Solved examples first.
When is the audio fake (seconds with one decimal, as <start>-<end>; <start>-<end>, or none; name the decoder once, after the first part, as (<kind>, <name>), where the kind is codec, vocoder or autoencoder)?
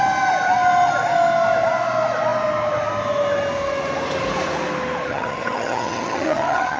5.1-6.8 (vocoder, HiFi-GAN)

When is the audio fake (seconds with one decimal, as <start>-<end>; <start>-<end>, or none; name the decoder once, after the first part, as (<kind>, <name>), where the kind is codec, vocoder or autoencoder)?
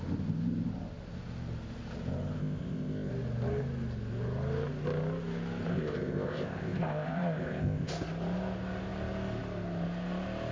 2.4-3.1 (codec, ZipCodec); 5.7-7.9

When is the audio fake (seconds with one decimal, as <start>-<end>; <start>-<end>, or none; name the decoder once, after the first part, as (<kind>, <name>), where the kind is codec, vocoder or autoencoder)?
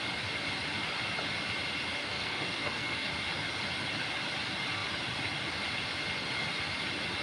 2.0-3.1 (codec, SNAC)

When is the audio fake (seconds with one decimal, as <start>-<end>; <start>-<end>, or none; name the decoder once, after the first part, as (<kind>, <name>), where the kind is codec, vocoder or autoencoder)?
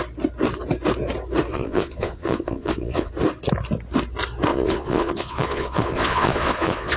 1.5-3.1 (vocoder, Vocos); 4.5-7.0